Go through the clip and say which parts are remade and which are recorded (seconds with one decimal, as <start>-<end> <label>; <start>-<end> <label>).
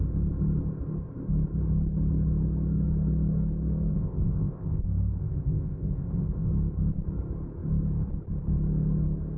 0.0-3.9 recorded; 3.9-4.8 remade; 4.8-5.2 recorded; 5.2-6.5 remade; 6.5-9.4 recorded